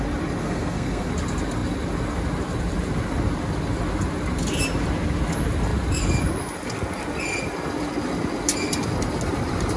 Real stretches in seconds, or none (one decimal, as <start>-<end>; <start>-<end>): 0.0-0.4; 1.1-9.8